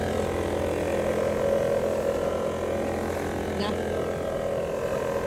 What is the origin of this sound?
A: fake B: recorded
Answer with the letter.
B